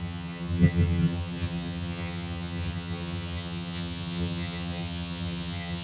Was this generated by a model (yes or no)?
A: yes